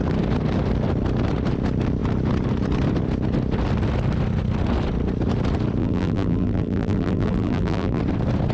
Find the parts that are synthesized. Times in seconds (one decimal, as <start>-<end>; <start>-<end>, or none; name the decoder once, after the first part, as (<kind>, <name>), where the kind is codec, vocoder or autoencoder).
5.8-8.0 (vocoder, BigVGAN v2)